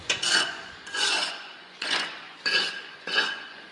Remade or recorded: remade